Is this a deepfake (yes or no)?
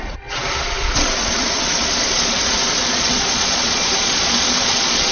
yes